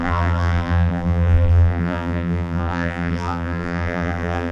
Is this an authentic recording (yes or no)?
no